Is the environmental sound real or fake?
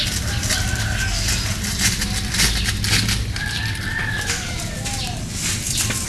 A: real